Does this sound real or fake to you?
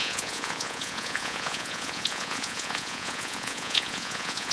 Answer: fake